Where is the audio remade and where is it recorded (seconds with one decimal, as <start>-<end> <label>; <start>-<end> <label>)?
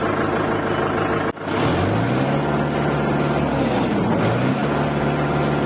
0.0-5.7 recorded